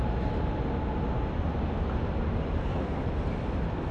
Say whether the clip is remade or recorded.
recorded